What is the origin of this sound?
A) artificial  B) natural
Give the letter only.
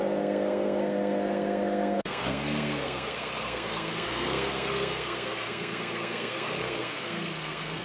A